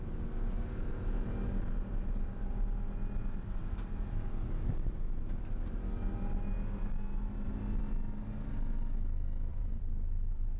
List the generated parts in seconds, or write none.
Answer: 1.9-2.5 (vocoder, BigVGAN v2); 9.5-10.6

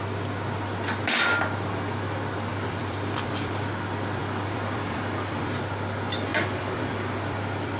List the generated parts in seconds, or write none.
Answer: 2.5-3.7 (vocoder, BigVGAN v2); 4.2-5.6; 6.3-7.8

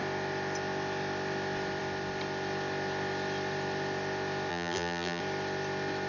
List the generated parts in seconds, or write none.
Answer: 4.5-5.2 (vocoder, BigVGAN v2)